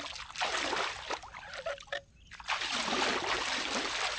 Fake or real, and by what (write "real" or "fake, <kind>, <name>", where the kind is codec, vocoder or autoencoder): real